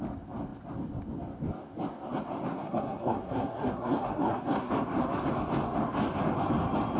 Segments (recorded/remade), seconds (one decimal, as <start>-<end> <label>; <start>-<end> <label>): 0.0-2.5 recorded; 2.5-4.7 remade; 4.7-7.0 recorded